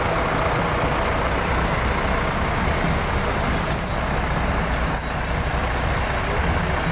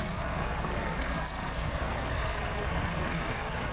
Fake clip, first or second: second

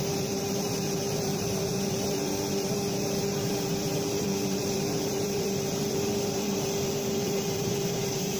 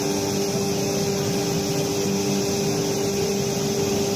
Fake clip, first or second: first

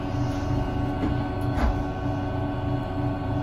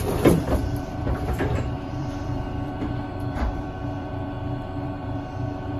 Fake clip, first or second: second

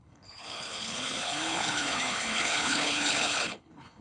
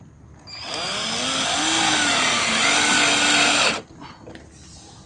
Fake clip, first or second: first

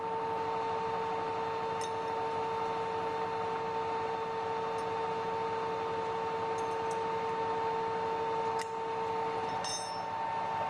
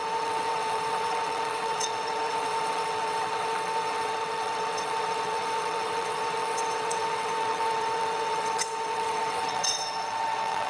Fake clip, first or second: second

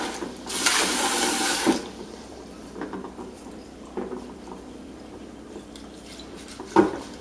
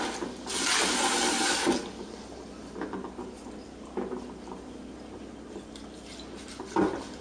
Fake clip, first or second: first